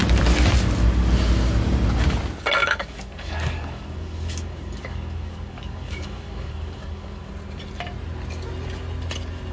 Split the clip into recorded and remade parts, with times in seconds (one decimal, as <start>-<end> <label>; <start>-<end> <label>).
0.0-2.6 recorded; 2.6-7.3 remade; 7.3-9.5 recorded